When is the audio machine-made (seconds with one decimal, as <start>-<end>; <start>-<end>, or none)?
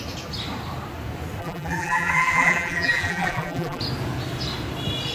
1.4-3.8